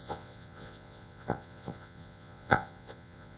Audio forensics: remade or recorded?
remade